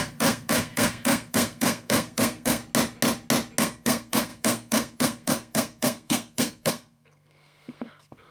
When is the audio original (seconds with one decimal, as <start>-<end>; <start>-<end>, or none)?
2.6-3.6